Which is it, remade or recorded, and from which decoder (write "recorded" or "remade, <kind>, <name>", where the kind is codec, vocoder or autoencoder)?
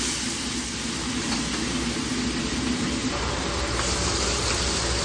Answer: recorded